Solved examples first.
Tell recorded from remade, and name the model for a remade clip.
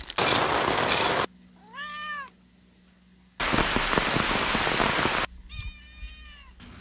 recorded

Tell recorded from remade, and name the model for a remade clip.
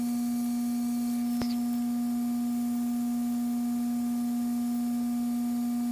recorded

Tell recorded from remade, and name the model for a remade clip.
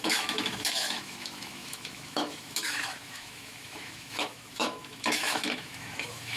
remade, autoencoder, DAC-VAE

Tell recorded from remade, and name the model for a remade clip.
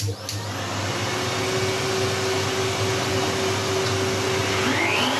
recorded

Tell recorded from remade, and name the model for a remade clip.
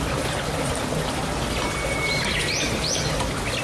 recorded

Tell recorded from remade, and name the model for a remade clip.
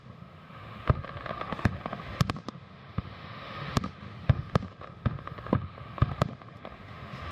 remade, autoencoder, DAC-VAE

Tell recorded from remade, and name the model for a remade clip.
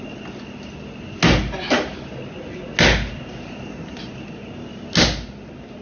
recorded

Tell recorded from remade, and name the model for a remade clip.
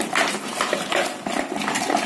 recorded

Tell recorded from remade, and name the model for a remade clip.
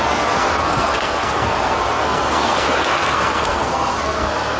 remade, codec, SNAC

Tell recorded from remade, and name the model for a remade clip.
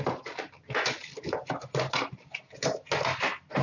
recorded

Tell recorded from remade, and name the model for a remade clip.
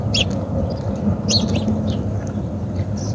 recorded